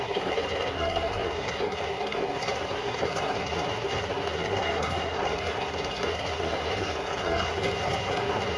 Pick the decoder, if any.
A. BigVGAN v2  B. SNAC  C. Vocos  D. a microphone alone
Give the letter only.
B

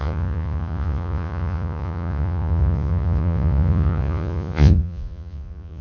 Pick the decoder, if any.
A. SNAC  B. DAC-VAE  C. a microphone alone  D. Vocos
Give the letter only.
D